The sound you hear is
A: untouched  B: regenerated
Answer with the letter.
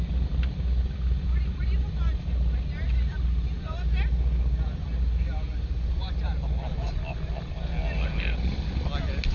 A